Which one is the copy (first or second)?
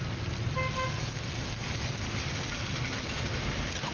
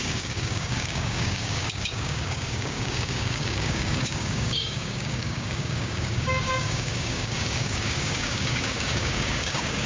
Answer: second